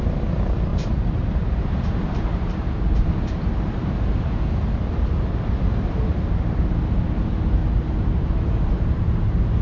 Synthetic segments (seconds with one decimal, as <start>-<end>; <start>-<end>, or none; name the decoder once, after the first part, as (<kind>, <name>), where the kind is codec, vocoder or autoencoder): 0.7-4.5 (vocoder, BigVGAN v2); 7.6-8.5